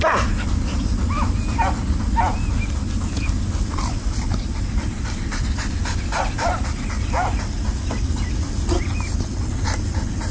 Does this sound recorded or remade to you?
recorded